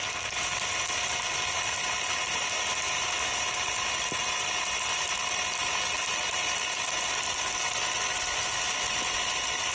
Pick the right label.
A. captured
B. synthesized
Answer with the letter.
A